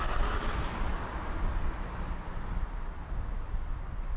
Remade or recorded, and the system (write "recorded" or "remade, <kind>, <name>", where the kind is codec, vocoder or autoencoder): recorded